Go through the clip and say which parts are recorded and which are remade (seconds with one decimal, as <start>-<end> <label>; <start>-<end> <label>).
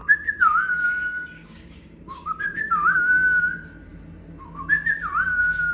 0.0-3.4 remade; 3.4-5.7 recorded